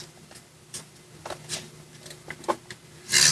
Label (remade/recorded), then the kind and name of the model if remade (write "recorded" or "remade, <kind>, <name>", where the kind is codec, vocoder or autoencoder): recorded